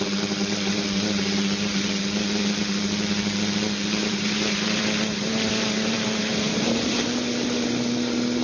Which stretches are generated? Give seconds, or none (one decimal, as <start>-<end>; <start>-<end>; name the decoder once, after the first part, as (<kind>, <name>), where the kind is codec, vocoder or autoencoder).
4.0-7.1 (vocoder, BigVGAN v2)